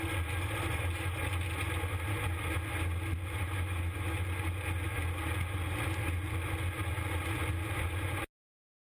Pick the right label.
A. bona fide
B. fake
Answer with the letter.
A